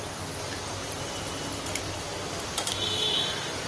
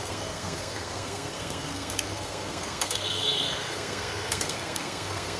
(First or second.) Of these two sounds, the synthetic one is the second